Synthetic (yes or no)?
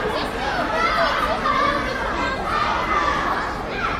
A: no